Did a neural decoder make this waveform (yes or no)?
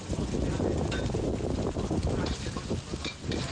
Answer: no